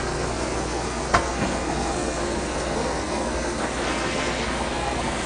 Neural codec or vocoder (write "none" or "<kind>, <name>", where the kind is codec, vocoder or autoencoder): codec, SNAC